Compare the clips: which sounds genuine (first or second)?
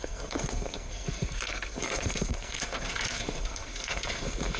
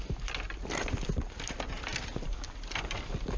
second